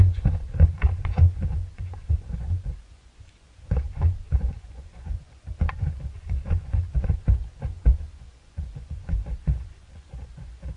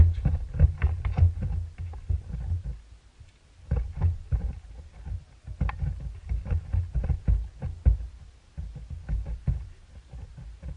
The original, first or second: second